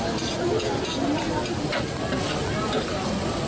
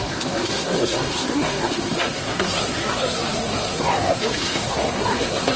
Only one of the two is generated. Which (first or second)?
second